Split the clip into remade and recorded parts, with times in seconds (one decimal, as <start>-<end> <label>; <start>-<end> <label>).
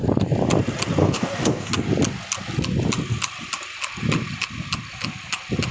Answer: 0.0-1.0 recorded; 1.0-1.7 remade; 1.7-5.7 recorded